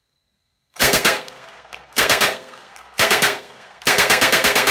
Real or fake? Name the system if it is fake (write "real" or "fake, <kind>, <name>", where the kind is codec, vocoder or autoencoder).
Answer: fake, codec, SNAC